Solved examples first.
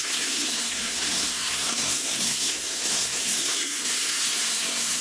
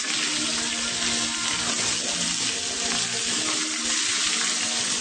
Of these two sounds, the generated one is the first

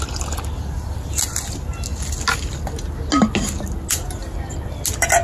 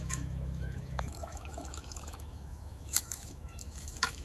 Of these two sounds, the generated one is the second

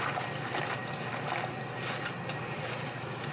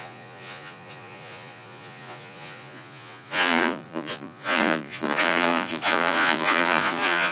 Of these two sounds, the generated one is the second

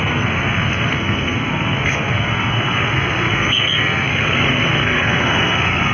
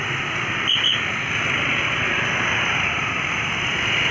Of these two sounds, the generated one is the first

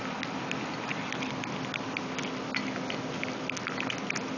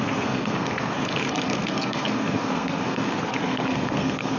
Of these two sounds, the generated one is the second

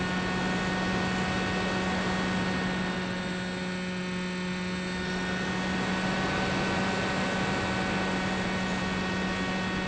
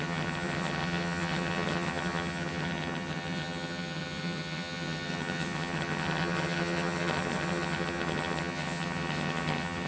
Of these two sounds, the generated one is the second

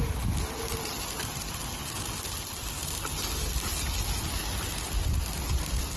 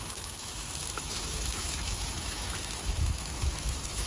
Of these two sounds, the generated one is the second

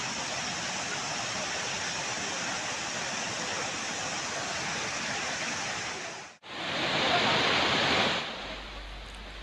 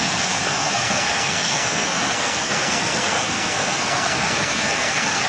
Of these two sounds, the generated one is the second